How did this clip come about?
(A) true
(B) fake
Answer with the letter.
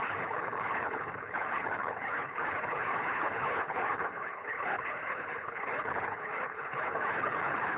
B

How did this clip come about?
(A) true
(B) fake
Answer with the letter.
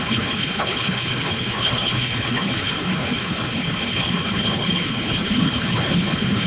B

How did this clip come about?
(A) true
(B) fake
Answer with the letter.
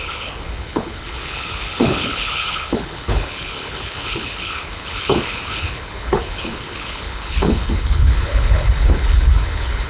B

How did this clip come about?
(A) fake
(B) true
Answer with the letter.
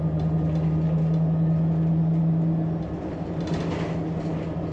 B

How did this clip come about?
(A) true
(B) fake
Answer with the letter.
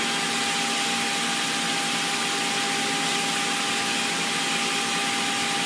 A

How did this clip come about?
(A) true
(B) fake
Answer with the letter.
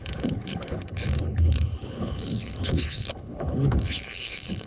B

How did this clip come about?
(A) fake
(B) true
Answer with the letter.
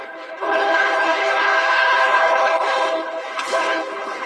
A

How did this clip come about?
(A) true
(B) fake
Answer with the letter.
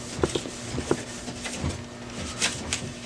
A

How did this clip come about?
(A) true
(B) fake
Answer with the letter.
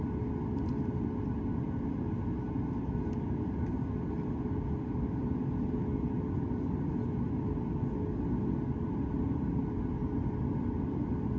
A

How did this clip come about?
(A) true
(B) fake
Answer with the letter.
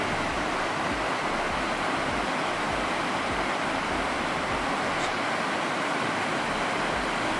A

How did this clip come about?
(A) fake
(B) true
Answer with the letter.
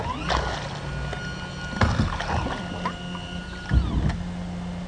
B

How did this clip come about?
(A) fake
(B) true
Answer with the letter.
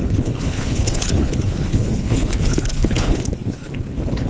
A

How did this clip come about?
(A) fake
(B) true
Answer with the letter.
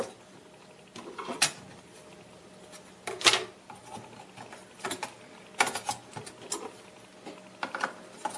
B